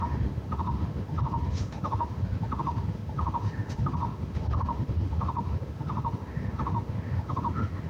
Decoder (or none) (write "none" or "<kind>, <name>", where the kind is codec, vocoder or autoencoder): autoencoder, DAC-VAE